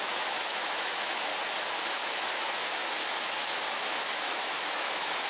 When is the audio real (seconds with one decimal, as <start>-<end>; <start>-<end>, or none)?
1.3-1.9